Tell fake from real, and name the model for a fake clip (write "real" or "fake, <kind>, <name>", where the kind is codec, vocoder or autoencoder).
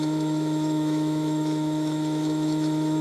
fake, autoencoder, DAC-VAE